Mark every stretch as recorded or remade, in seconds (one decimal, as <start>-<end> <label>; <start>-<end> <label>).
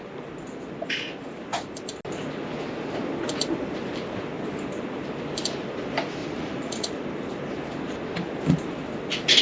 0.0-6.2 recorded; 6.2-6.9 remade; 6.9-9.4 recorded